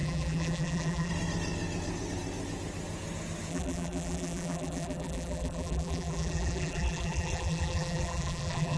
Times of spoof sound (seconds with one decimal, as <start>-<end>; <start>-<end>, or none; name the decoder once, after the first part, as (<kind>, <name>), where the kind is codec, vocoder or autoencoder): 0.0-1.1 (vocoder, BigVGAN v2); 3.5-8.8